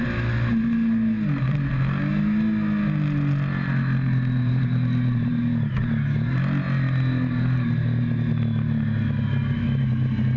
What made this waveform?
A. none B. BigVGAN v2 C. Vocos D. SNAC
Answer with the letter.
A